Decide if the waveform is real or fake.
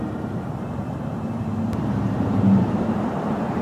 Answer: fake